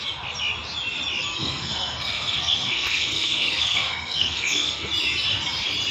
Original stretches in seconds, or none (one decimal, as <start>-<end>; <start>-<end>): 0.0-1.4; 4.9-5.9